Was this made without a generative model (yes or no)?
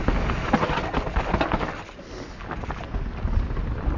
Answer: yes